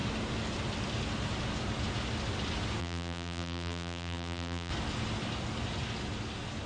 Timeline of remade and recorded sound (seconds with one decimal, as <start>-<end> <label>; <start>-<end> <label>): 0.0-2.8 recorded; 2.8-4.7 remade; 4.7-6.7 recorded